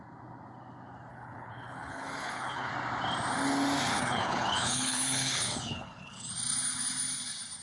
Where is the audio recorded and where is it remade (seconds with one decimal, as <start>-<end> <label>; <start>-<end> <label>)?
0.0-1.1 recorded; 1.1-2.7 remade; 2.7-3.9 recorded; 3.9-6.3 remade; 6.3-7.6 recorded